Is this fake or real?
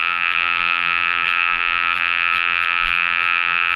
fake